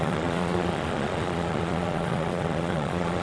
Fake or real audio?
fake